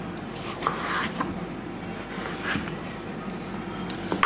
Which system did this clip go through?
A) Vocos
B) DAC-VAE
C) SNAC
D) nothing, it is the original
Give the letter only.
D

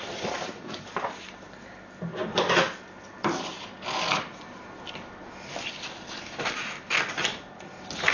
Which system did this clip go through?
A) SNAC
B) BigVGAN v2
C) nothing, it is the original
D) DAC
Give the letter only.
C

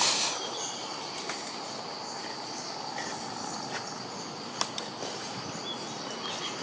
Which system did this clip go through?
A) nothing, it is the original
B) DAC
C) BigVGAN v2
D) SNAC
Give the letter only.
A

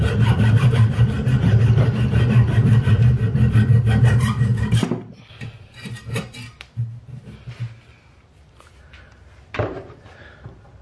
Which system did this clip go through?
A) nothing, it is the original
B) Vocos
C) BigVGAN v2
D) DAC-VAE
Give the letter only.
C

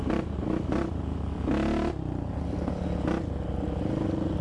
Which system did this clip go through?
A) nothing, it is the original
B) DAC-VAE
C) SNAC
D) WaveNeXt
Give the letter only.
A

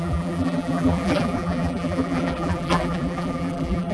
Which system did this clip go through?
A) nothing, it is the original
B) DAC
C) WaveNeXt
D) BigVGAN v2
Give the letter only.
D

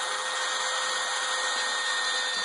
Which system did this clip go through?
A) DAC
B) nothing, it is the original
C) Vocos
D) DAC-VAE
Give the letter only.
B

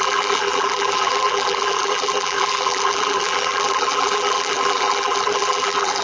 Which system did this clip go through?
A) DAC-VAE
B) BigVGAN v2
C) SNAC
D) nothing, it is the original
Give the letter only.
B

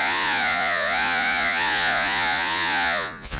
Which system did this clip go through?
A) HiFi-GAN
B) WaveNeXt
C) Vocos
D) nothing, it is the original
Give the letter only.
C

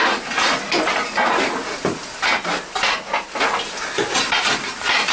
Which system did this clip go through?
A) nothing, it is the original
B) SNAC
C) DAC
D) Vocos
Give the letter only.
A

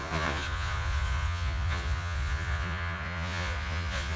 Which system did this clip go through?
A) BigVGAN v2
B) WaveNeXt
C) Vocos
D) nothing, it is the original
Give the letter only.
C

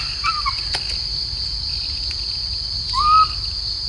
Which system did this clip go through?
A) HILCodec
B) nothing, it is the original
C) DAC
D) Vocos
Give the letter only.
B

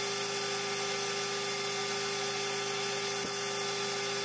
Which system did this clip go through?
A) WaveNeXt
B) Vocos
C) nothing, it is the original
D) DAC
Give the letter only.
C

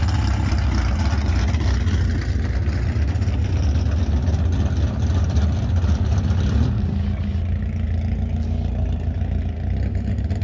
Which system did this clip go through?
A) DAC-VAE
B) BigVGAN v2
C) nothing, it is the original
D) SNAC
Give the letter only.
C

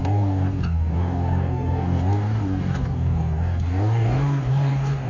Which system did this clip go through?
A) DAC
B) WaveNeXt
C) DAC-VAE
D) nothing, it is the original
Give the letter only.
A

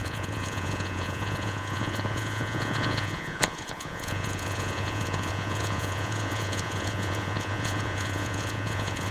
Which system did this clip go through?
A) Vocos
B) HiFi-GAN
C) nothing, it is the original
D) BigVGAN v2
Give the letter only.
A